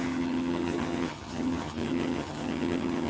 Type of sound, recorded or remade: remade